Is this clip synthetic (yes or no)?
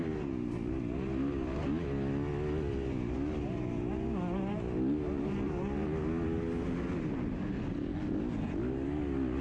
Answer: no